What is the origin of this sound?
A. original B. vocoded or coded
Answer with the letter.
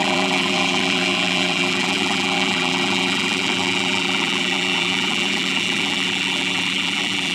B